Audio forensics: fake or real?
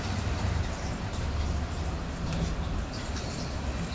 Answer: fake